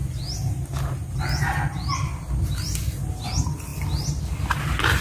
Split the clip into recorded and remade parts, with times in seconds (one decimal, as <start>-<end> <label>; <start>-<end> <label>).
0.0-5.0 recorded